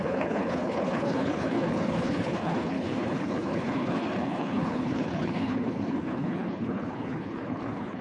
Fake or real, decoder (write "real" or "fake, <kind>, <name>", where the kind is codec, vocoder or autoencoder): fake, codec, HILCodec